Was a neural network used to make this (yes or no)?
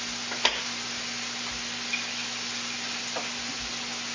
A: no